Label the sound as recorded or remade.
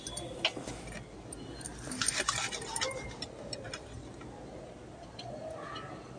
recorded